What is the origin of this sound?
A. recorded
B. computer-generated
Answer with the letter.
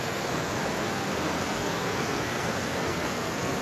B